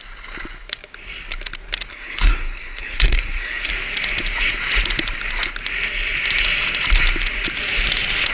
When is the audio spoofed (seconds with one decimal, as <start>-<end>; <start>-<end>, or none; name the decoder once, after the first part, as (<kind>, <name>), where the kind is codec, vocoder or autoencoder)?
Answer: 1.9-3.7 (codec, SNAC)